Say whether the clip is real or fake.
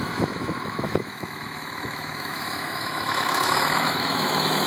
fake